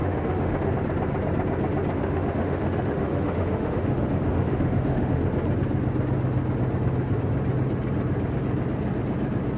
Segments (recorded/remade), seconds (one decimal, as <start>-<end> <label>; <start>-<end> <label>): 0.0-0.7 remade; 0.7-2.0 recorded; 2.0-5.2 remade; 5.2-9.6 recorded